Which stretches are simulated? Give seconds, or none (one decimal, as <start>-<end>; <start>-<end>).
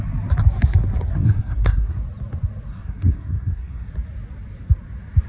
1.1-2.0; 2.7-3.9